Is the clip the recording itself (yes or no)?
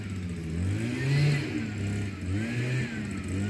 yes